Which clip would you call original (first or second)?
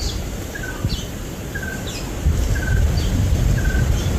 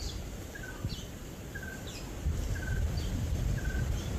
first